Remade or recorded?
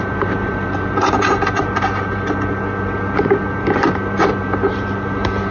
remade